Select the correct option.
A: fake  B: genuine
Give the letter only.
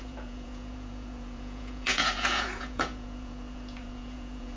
A